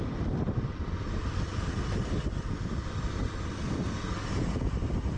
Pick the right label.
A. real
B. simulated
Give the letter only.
A